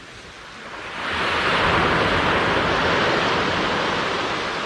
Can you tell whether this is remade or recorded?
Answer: recorded